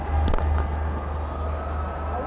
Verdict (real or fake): real